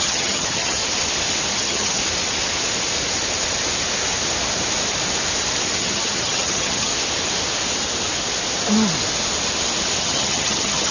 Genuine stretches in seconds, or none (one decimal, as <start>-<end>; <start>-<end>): 0.8-1.5; 2.0-5.8; 6.9-10.0